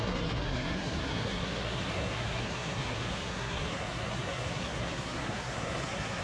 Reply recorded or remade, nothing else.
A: remade